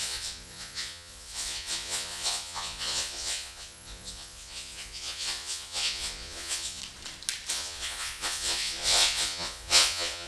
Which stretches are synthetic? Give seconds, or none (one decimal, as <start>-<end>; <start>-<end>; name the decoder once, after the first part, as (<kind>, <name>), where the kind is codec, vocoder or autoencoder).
0.0-6.8 (vocoder, Vocos); 7.5-10.3